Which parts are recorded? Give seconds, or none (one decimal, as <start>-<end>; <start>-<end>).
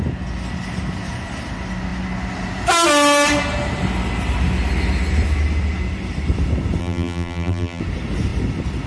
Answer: 0.0-6.8; 7.8-8.9